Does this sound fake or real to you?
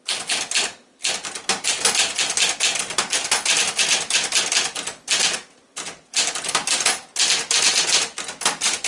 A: real